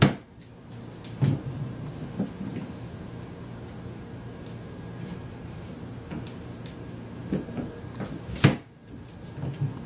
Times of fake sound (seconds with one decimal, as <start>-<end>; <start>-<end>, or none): 5.1-5.6